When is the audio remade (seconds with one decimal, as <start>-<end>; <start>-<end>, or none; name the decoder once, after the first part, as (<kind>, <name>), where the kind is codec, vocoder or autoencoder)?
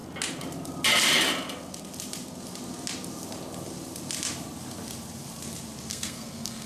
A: 5.9-6.7 (codec, SNAC)